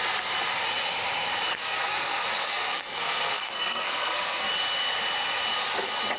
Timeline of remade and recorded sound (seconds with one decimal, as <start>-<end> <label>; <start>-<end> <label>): 0.0-1.5 recorded; 1.5-4.5 remade; 4.5-6.2 recorded